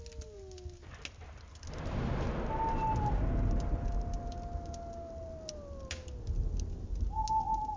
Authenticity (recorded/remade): recorded